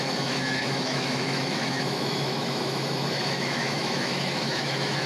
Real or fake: fake